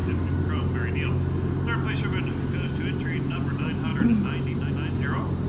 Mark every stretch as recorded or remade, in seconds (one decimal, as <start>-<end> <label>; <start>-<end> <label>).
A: 0.0-5.5 recorded

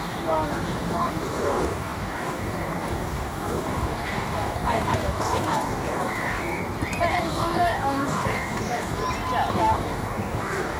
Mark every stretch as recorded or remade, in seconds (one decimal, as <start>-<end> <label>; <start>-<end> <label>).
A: 0.0-6.6 remade; 6.6-7.1 recorded; 7.1-9.0 remade; 9.0-9.5 recorded; 9.5-10.8 remade

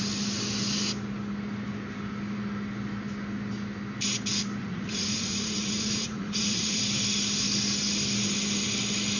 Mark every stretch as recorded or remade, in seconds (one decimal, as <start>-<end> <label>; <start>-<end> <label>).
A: 0.0-4.6 recorded; 4.6-6.8 remade; 6.8-9.2 recorded

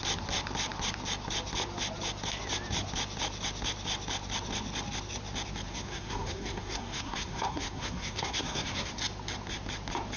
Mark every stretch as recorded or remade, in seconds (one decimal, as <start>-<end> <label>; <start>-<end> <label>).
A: 0.0-5.7 recorded; 5.7-9.0 remade; 9.0-10.2 recorded

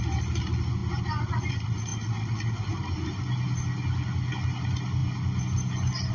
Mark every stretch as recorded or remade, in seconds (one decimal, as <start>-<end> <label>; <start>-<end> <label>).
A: 0.0-6.1 recorded